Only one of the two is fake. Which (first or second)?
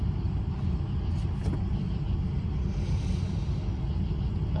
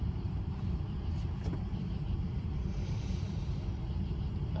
second